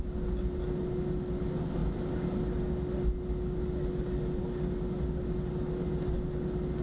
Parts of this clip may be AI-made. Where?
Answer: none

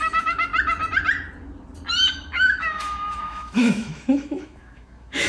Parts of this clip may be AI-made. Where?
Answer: 0.0-0.5 (autoencoder, DAC-VAE); 2.1-5.3

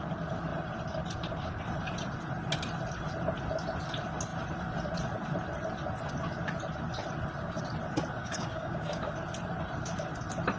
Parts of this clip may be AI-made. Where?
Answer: 8.2-9.1 (codec, DAC)

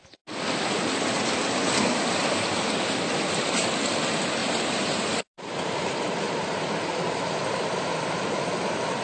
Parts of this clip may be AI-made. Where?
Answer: 4.4-8.1 (vocoder, BigVGAN v2)